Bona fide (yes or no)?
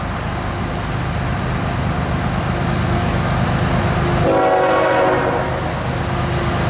yes